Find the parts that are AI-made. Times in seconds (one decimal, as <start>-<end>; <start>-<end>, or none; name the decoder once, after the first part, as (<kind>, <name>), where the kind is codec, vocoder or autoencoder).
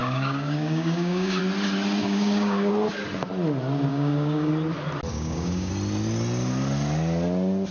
0.0-1.4 (codec, DAC); 2.0-2.7; 3.9-4.5; 5.1-5.7